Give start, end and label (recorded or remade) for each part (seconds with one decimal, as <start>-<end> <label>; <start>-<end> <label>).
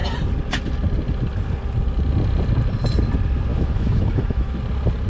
0.0-3.5 recorded; 3.5-4.6 remade; 4.6-5.1 recorded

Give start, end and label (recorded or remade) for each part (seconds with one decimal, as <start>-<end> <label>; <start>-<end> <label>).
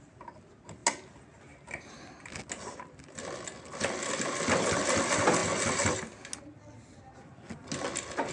0.0-8.3 recorded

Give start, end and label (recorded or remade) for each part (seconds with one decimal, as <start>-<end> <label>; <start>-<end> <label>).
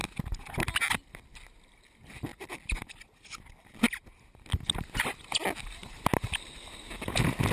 0.0-7.5 recorded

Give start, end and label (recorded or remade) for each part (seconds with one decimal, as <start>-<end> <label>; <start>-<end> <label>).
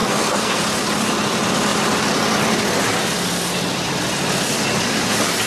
0.0-0.6 remade; 0.6-5.5 recorded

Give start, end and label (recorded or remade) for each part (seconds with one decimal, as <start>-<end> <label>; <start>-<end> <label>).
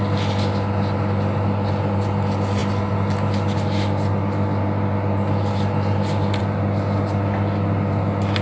0.0-8.4 recorded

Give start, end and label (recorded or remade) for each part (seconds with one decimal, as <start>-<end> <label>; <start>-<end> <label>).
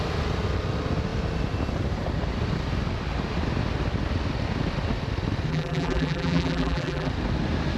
0.0-5.5 recorded; 5.5-7.1 remade; 7.1-7.8 recorded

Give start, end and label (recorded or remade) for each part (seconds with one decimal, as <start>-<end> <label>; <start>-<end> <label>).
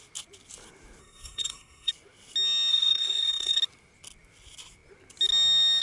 0.0-1.0 recorded; 1.0-1.9 remade; 1.9-2.7 recorded; 2.7-3.6 remade; 3.6-5.8 recorded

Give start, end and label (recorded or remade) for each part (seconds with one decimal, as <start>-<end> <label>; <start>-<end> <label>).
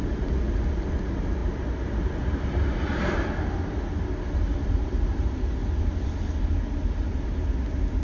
0.0-8.0 recorded